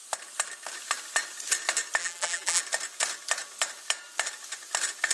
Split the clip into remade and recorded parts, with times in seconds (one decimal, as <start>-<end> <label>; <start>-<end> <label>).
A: 0.0-2.0 recorded; 2.0-2.6 remade; 2.6-5.1 recorded